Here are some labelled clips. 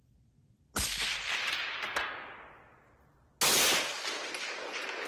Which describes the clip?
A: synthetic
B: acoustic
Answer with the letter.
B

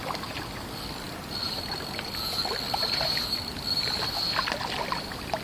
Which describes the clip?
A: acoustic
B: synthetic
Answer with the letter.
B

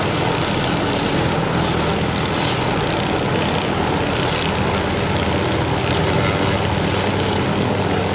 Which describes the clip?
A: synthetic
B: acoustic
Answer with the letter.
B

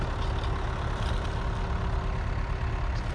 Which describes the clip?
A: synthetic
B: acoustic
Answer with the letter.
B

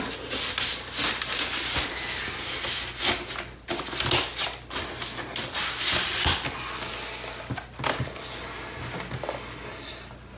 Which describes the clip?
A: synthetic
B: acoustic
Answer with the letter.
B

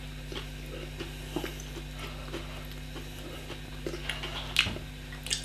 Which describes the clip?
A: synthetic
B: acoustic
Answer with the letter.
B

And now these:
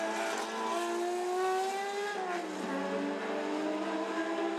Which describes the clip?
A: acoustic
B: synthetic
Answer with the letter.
A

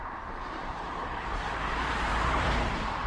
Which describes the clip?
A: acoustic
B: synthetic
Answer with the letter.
B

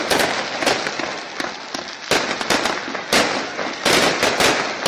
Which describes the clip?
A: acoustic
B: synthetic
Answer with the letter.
A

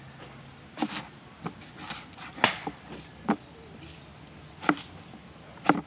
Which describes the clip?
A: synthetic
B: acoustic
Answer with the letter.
B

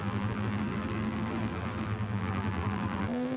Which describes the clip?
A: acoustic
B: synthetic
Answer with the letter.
B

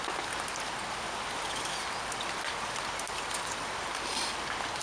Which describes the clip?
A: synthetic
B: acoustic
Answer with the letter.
B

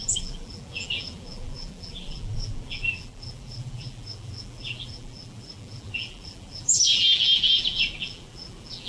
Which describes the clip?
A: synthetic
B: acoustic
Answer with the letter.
A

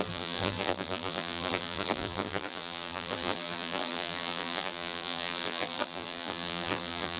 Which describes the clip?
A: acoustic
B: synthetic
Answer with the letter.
B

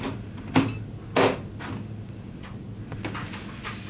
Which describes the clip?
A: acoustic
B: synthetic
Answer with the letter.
A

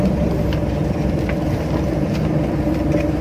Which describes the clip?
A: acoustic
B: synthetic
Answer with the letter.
A